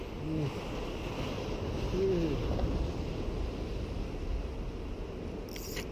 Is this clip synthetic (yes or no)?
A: no